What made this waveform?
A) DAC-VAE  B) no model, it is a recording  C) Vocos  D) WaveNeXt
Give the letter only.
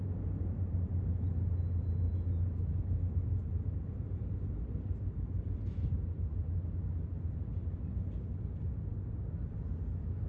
B